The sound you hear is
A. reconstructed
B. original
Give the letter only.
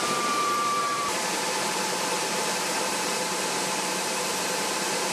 A